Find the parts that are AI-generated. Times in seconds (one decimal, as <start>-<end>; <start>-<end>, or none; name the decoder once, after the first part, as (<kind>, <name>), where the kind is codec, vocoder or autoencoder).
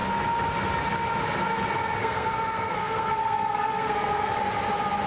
2.0-4.3 (codec, SNAC)